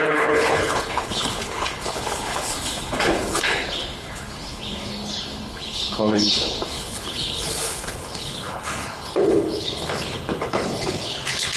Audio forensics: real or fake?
fake